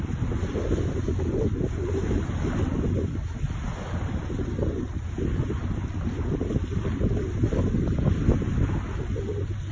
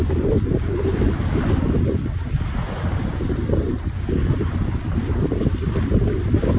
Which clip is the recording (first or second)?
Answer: first